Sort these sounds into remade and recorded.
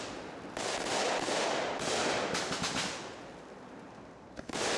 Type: recorded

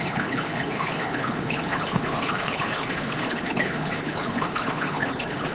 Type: remade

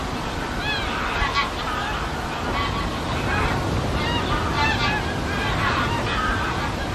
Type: recorded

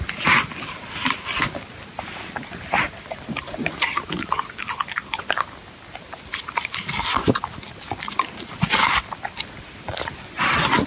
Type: recorded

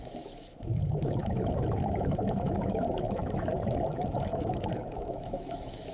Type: remade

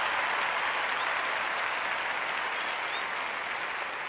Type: recorded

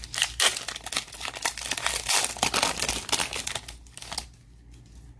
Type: recorded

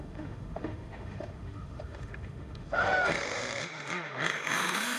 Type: remade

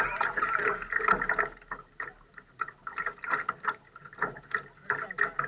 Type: recorded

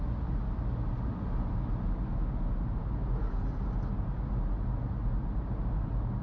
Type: recorded